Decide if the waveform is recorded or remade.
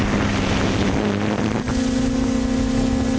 recorded